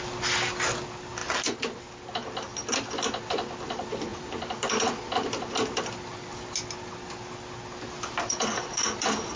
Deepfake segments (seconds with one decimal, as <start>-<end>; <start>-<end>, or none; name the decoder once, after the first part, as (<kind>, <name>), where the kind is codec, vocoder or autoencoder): none